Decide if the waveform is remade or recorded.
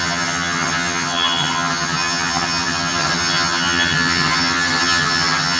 remade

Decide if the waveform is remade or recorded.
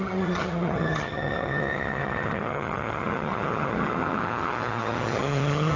remade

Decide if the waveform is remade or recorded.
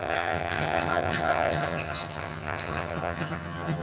remade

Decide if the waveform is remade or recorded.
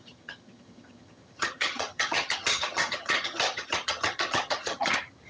remade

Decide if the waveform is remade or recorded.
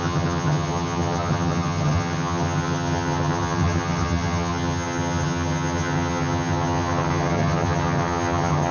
remade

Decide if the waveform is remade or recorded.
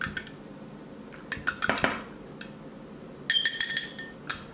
recorded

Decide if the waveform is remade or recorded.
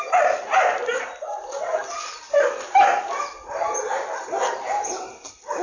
recorded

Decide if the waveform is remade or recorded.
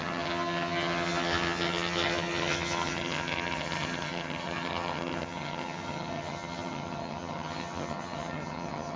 remade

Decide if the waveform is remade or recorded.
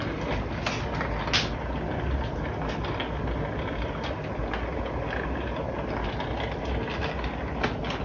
recorded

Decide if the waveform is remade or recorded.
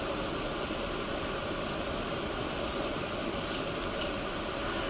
recorded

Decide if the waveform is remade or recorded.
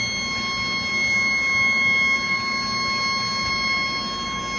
recorded